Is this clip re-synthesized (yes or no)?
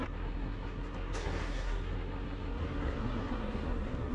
yes